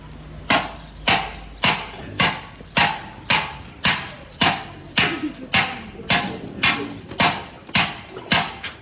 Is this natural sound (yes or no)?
yes